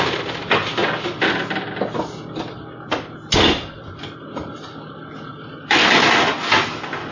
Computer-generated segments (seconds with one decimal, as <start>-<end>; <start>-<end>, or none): none